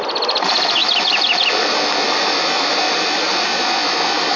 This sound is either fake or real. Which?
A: real